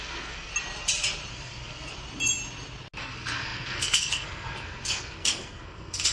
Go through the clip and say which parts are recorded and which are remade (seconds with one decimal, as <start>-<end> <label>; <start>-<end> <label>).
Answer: 0.0-0.5 remade; 0.5-1.3 recorded; 1.3-1.9 remade; 1.9-3.0 recorded; 3.0-6.1 remade